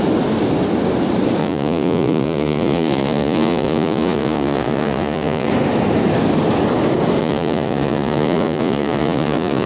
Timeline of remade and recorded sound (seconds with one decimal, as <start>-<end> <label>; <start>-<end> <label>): 0.0-1.4 recorded; 1.4-5.5 remade; 5.5-7.2 recorded; 7.2-9.7 remade